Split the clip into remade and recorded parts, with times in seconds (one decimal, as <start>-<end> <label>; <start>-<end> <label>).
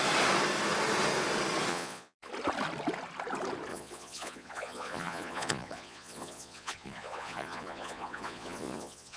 0.0-1.7 recorded; 1.7-2.3 remade; 2.3-3.7 recorded; 3.7-9.2 remade